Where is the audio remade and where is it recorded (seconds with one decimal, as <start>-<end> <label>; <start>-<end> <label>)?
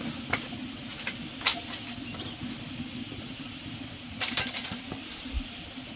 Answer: 0.0-1.5 recorded; 1.5-5.1 remade; 5.1-6.0 recorded